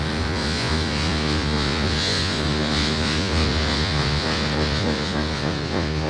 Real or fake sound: fake